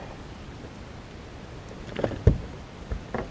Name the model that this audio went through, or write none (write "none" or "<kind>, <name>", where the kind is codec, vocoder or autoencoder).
none